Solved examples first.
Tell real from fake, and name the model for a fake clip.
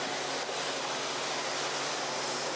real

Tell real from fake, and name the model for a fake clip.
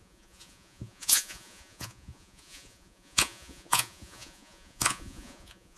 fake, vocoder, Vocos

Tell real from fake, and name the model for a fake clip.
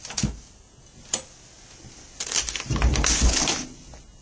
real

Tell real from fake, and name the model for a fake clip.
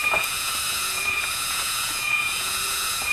fake, vocoder, Vocos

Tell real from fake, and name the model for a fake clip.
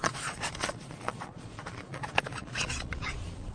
fake, vocoder, Vocos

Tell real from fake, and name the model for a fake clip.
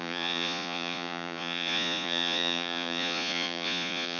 fake, vocoder, Vocos